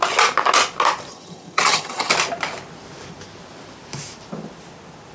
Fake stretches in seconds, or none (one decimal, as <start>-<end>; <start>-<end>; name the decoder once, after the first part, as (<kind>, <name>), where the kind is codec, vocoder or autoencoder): 1.1-2.1 (vocoder, HiFi-GAN)